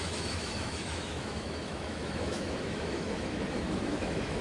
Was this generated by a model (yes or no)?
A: yes